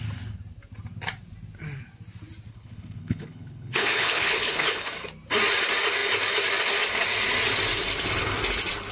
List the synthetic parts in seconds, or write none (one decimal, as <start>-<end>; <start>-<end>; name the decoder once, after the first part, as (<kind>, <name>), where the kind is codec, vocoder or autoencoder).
2.5-4.9 (codec, HILCodec)